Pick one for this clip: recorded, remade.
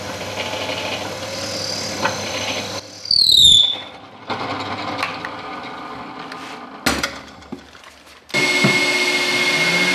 recorded